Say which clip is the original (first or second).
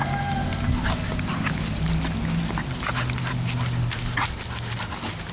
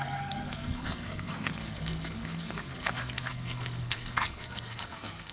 first